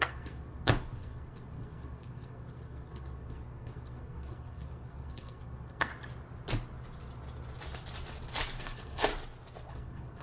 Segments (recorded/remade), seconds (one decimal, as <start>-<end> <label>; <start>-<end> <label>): 0.0-5.9 remade; 5.9-8.6 recorded; 8.6-9.1 remade; 9.1-9.7 recorded; 9.7-10.2 remade